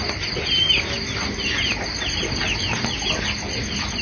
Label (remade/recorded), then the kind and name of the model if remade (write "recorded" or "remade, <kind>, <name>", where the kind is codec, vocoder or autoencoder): recorded